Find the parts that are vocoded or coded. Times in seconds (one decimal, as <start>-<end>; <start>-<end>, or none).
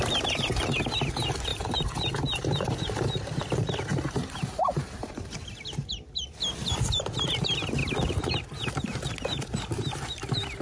1.5-3.4; 3.9-5.2